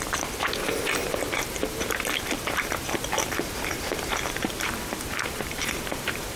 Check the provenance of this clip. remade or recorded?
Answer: remade